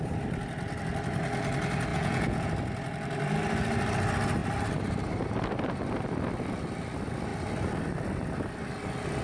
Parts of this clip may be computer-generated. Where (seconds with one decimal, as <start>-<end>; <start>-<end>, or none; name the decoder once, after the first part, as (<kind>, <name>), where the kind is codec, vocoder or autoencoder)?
1.9-2.5 (vocoder, Vocos)